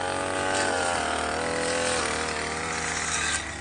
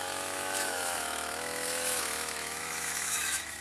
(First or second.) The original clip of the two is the first